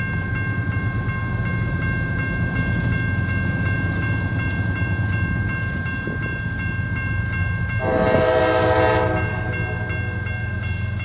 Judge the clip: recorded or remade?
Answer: recorded